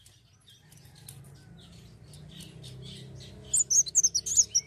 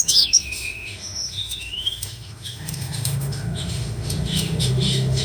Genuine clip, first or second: first